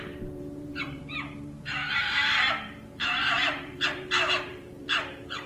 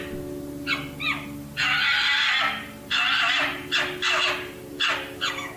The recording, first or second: second